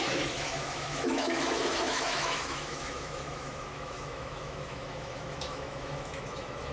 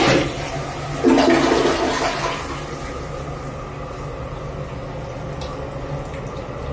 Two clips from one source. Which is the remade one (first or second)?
first